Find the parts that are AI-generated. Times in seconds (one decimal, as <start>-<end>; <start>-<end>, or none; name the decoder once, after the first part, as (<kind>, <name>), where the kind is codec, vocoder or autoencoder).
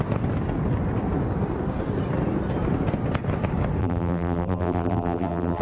3.8-5.6 (vocoder, BigVGAN v2)